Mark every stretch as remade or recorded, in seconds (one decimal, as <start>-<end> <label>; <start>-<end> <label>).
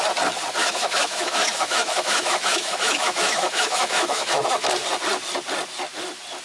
0.0-0.6 recorded; 0.6-4.4 remade; 4.4-6.4 recorded